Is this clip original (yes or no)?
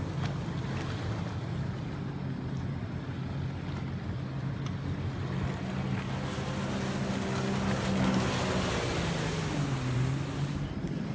yes